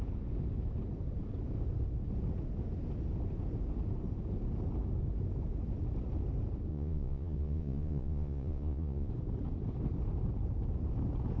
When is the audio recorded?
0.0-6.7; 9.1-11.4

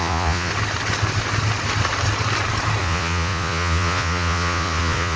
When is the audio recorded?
0.5-2.8

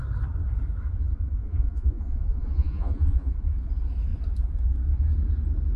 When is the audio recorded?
0.0-1.4; 3.3-5.8

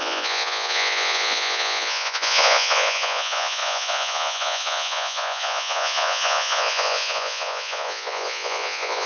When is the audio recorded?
none

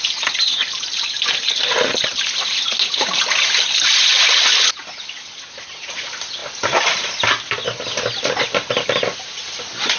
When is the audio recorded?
0.0-10.0

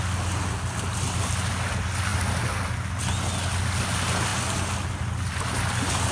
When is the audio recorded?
0.0-6.1

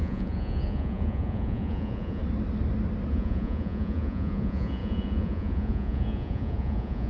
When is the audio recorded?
2.2-3.1

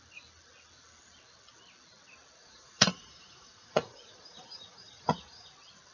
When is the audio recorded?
0.0-2.4; 5.5-5.9